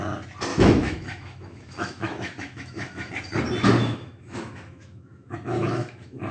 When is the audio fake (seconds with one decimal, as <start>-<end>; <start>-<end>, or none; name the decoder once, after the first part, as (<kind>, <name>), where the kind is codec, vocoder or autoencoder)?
0.5-3.1 (autoencoder, DAC-VAE); 3.8-6.3